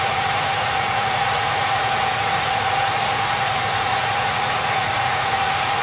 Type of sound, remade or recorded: remade